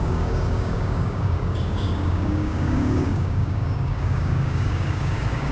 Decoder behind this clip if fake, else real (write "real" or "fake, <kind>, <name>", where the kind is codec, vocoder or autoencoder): fake, codec, DAC